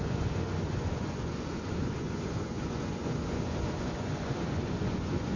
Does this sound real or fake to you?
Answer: fake